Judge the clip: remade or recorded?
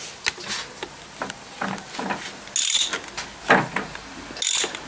recorded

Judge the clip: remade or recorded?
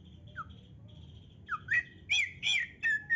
recorded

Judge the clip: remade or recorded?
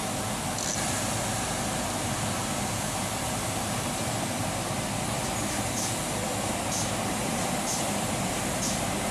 recorded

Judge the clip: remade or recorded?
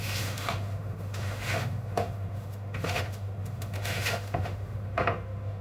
remade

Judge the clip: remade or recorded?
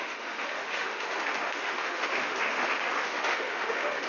remade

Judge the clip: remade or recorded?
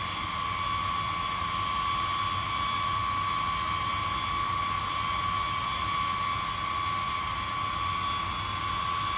recorded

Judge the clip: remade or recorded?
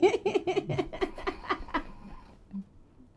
recorded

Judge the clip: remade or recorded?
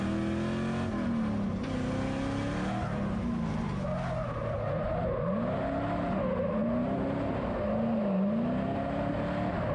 recorded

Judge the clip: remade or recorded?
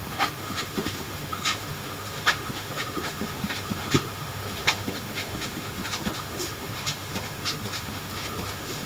remade